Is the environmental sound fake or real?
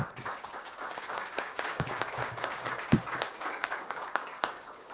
fake